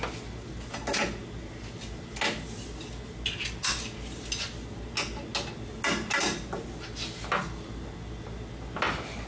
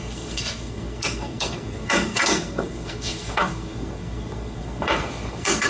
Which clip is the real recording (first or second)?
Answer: first